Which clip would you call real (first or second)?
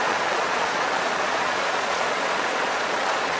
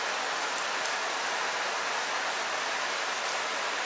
second